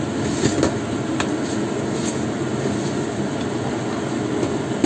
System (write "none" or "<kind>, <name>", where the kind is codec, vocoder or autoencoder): none